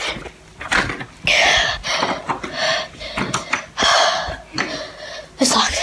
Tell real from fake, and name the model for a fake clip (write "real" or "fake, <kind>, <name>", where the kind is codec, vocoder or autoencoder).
real